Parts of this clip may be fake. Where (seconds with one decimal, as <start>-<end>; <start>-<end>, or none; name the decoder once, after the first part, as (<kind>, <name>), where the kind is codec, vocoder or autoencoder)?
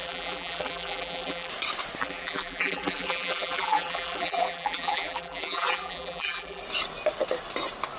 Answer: 0.0-1.5 (vocoder, BigVGAN v2); 2.0-6.6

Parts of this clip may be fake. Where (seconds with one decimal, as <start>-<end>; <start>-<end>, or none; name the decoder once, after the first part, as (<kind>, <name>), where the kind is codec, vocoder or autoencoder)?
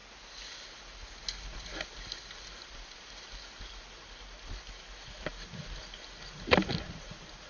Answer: none